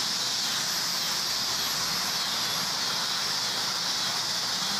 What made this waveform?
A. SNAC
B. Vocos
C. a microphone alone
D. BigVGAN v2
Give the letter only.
C